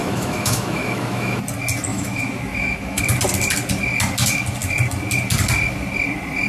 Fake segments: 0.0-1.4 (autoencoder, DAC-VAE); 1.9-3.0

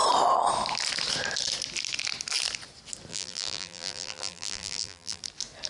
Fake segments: 3.1-5.2 (vocoder, BigVGAN v2)

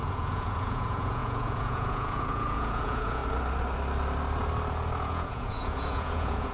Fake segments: 0.0-3.2 (vocoder, Vocos); 5.0-6.5

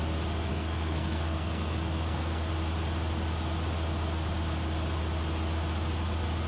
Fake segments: 0.5-2.5 (codec, SNAC)

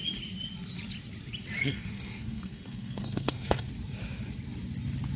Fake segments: 1.6-3.7 (codec, SNAC)